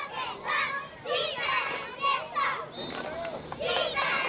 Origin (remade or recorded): recorded